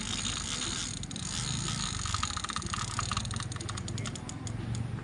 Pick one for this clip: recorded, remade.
recorded